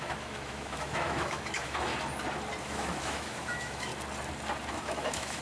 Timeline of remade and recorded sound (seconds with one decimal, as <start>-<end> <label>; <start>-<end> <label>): 0.0-1.9 remade; 1.9-2.6 recorded; 2.6-3.9 remade; 3.9-4.7 recorded; 4.7-5.4 remade